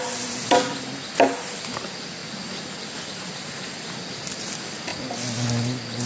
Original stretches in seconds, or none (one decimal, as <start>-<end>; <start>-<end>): 0.0-6.1

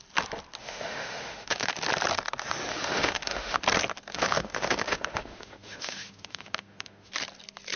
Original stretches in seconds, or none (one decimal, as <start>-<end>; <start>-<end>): 0.0-0.6; 1.7-2.7; 3.6-4.1; 7.1-7.8

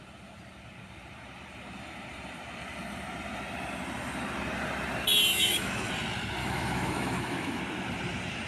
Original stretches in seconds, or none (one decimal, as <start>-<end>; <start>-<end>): 0.0-5.3; 5.9-6.4; 7.6-8.5

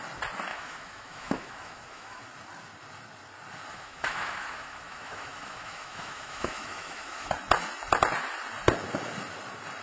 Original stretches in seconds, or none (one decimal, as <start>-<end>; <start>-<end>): 0.0-0.5; 2.2-3.7; 7.3-9.8

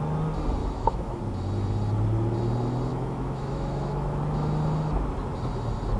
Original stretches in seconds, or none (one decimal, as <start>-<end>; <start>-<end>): 0.0-0.6; 1.2-2.9; 4.2-6.0

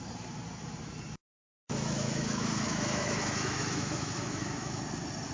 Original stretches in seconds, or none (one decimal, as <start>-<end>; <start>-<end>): 0.0-1.6; 4.8-5.3

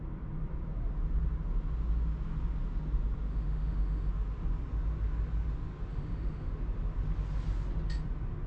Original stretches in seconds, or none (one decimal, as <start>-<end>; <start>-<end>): 0.0-3.3; 4.1-5.9; 6.5-8.5